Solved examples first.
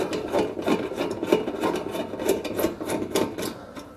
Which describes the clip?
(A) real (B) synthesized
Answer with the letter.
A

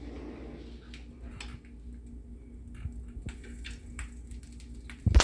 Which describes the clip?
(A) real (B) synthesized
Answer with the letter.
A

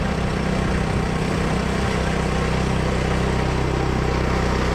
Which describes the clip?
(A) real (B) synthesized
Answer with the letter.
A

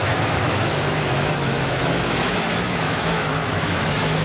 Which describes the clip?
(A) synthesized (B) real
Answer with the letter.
A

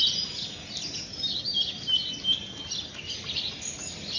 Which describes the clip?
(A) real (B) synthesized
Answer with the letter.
A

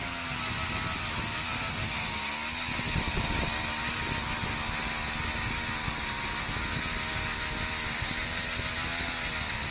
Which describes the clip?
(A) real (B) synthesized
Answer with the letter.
A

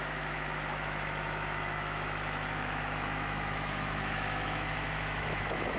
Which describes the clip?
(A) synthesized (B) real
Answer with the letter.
A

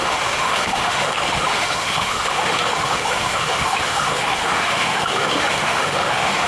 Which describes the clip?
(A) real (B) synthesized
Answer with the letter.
B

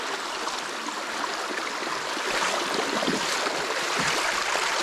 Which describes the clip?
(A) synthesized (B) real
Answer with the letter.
B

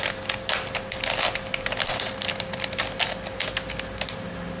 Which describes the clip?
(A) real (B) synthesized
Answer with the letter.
A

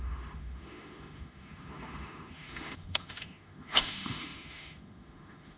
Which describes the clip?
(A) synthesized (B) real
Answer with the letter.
A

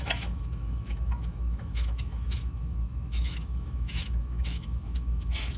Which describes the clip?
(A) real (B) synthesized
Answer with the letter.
B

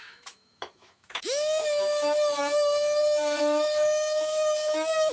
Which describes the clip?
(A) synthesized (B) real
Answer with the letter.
A